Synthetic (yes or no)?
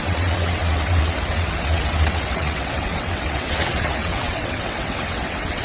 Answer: yes